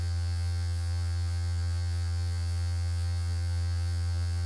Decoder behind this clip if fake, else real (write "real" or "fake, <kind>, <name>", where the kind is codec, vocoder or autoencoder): fake, vocoder, Vocos